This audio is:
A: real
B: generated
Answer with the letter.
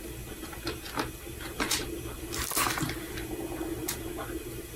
A